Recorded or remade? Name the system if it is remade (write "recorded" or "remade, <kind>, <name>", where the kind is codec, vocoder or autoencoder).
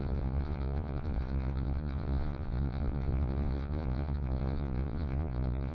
remade, vocoder, Vocos